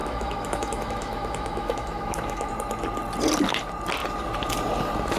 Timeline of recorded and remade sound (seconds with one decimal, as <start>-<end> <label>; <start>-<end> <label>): 0.0-2.5 remade; 2.5-5.2 recorded